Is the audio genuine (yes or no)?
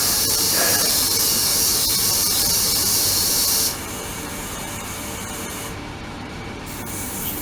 no